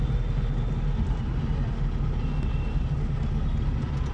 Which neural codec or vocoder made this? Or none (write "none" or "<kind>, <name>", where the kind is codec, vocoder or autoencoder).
none